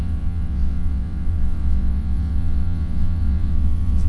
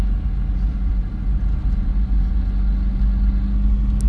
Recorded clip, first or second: second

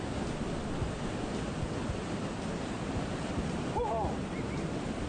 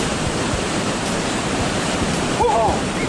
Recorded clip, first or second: first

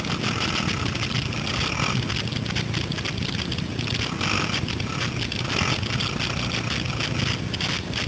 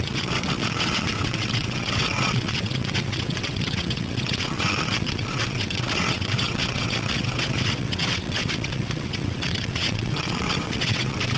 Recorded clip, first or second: first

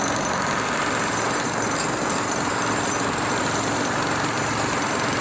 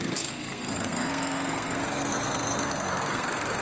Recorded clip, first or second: first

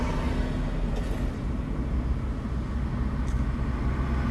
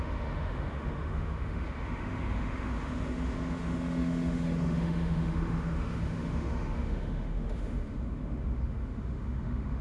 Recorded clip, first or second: first